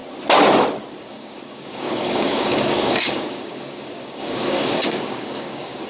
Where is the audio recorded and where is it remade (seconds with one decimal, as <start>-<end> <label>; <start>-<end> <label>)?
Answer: 0.0-1.0 recorded; 1.0-5.9 remade